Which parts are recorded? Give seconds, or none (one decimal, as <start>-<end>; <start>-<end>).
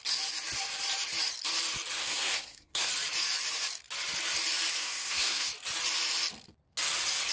0.0-2.0; 2.9-4.8; 5.5-7.3